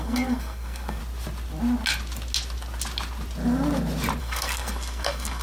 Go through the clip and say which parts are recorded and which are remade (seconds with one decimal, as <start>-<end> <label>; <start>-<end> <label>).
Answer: 0.0-1.0 remade; 1.0-4.2 recorded; 4.2-5.4 remade